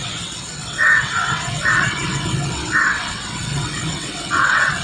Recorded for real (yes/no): no